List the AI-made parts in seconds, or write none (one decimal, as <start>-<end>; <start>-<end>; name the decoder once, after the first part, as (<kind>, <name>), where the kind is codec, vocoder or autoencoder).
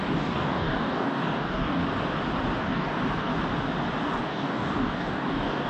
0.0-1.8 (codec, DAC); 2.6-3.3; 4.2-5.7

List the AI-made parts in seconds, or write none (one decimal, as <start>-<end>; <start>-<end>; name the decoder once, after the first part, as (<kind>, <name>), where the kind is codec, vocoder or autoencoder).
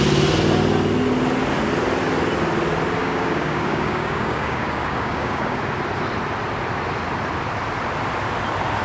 3.0-5.6 (codec, DAC)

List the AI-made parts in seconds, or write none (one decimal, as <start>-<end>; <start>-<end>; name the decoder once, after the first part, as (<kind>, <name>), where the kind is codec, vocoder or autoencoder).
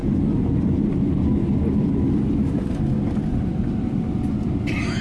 none